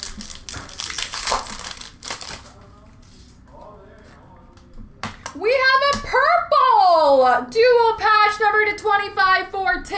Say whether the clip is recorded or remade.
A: recorded